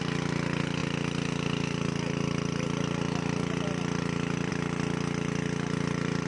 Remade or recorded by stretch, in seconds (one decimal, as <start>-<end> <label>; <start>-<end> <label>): 0.0-6.3 recorded